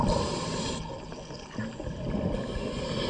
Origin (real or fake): real